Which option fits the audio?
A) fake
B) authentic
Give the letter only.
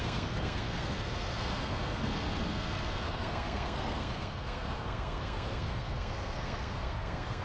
A